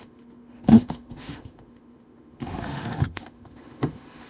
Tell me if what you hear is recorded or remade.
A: remade